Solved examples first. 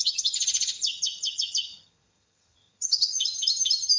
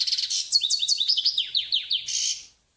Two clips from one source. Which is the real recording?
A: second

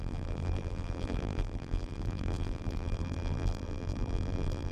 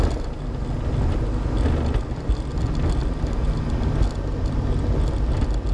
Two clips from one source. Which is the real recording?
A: second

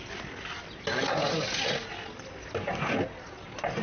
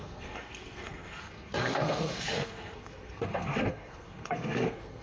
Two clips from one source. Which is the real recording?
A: first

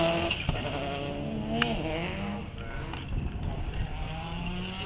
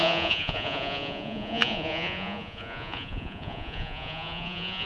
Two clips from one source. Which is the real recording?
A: first